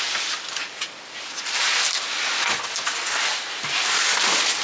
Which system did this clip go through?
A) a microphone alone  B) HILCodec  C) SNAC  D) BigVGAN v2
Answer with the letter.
A